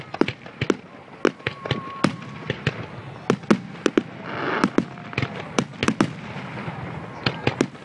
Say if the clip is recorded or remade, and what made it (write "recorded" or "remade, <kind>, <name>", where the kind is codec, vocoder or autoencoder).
recorded